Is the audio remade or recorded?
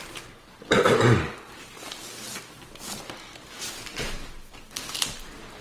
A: recorded